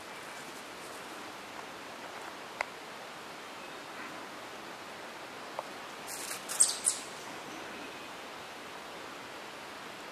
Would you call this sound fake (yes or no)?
no